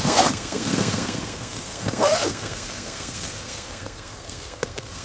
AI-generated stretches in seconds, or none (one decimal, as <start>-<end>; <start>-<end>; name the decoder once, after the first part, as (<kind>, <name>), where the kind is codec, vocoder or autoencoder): 0.0-5.0 (codec, SNAC)